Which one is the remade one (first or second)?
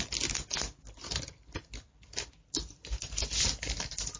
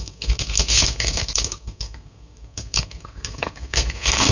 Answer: second